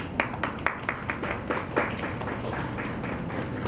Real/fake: real